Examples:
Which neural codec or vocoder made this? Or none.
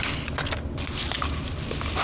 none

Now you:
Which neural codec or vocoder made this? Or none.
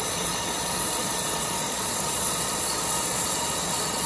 vocoder, Vocos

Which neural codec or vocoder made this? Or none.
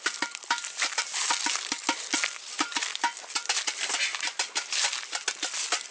none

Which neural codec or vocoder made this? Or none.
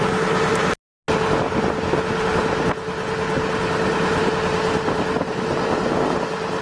none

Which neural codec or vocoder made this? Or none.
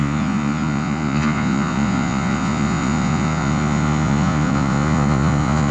vocoder, Vocos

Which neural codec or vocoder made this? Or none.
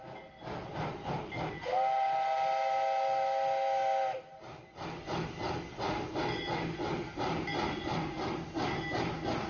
none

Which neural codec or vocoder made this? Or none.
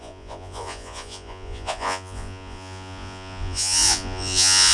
vocoder, Vocos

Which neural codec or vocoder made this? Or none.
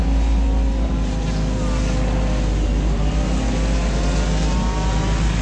none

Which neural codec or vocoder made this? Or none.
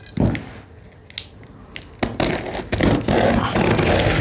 none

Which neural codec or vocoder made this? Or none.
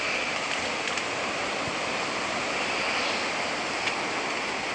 none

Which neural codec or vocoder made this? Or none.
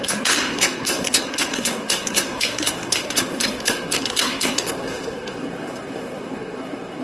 codec, SNAC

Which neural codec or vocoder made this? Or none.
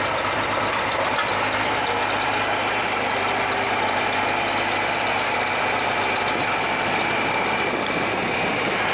none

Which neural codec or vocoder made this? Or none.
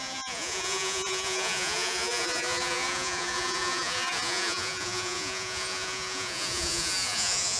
vocoder, Vocos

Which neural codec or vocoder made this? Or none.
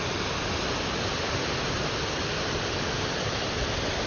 none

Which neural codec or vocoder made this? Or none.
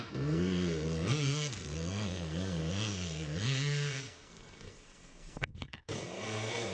codec, SNAC